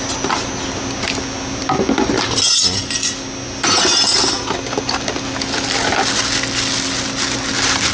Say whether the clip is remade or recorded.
recorded